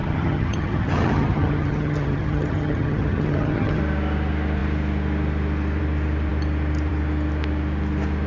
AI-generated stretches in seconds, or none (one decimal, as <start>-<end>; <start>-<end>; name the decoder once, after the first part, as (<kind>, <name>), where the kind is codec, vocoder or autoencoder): 0.0-3.8 (vocoder, HiFi-GAN)